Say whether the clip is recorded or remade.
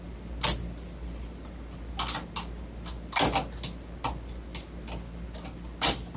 recorded